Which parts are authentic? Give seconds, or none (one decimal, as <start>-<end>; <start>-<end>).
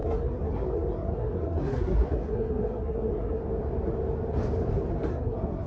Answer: 3.4-5.1